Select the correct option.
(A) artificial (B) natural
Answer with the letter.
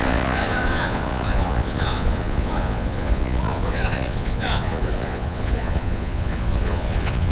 A